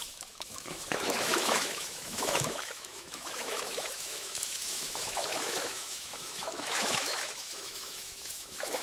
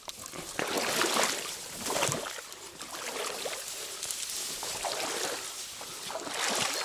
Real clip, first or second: second